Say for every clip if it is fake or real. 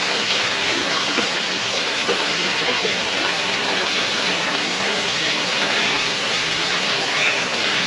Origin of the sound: fake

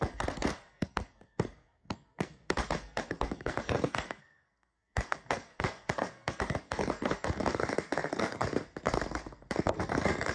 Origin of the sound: fake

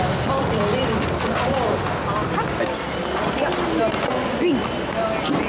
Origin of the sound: real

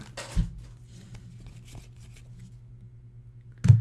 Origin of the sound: real